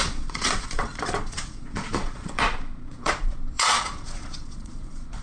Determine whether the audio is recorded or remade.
remade